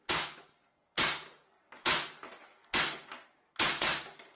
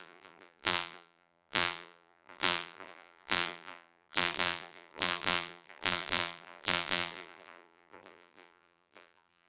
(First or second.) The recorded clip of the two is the first